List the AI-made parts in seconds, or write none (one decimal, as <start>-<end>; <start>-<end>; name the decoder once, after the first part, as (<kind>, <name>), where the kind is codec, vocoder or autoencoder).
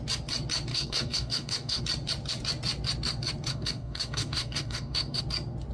0.7-1.8 (codec, DAC); 3.5-5.2